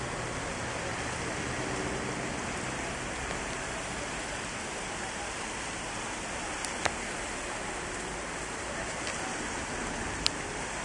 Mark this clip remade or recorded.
recorded